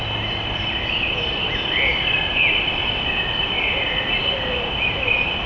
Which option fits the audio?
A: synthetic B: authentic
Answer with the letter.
B